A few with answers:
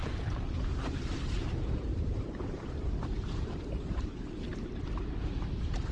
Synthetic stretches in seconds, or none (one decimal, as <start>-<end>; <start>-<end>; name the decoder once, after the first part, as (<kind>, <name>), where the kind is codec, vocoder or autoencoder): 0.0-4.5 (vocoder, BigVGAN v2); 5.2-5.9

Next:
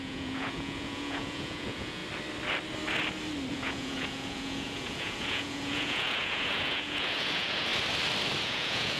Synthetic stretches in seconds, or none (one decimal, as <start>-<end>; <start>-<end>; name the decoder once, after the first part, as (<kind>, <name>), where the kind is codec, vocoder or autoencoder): 0.0-2.0 (vocoder, Vocos); 3.5-7.7; 8.4-9.0

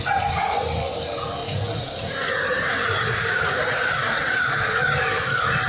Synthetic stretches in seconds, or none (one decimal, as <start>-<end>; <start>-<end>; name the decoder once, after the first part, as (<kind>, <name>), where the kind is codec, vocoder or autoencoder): 1.4-4.8 (vocoder, Vocos)

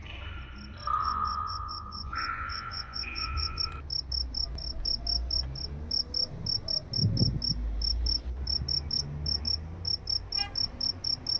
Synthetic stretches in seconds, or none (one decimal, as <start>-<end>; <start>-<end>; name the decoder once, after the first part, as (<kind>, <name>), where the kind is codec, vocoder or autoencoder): 1.0-3.6 (vocoder, Vocos)

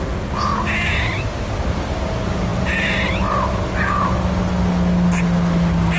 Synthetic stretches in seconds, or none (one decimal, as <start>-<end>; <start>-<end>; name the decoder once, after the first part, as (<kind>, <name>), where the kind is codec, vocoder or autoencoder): none

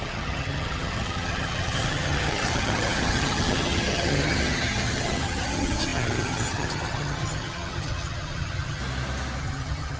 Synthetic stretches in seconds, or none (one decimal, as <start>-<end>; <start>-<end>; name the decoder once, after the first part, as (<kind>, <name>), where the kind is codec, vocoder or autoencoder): 0.0-8.8 (vocoder, HiFi-GAN); 9.4-10.0

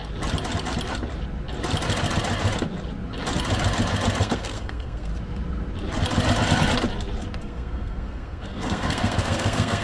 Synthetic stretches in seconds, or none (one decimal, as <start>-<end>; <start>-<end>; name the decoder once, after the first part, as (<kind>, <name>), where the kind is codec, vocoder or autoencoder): 4.2-5.1 (codec, SNAC); 7.4-9.8